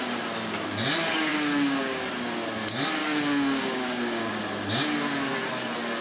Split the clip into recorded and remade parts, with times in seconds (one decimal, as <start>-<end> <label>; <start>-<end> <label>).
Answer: 0.0-1.3 recorded; 1.3-2.1 remade; 2.1-3.0 recorded; 3.0-4.3 remade; 4.3-6.0 recorded